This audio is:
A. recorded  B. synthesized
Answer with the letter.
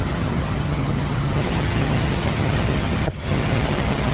B